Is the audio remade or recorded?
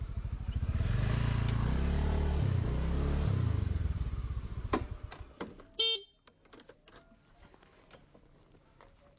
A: recorded